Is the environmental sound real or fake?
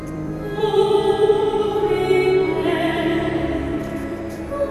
fake